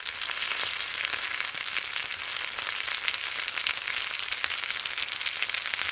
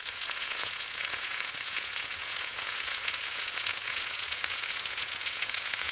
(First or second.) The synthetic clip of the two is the second